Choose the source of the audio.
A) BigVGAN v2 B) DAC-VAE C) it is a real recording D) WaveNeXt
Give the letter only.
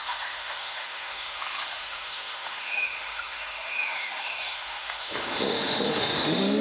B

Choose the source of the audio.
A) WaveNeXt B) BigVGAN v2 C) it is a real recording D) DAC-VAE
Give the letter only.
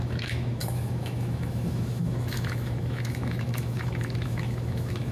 D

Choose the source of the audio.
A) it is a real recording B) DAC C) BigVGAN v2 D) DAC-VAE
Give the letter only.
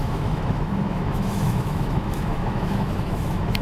D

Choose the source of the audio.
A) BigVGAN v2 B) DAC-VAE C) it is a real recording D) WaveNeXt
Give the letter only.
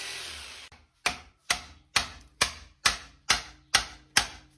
C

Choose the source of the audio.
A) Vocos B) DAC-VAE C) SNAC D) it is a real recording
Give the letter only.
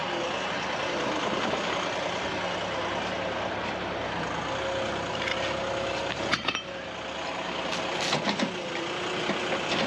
D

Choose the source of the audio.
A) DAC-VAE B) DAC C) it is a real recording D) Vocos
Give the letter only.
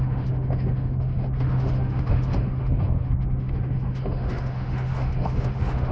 A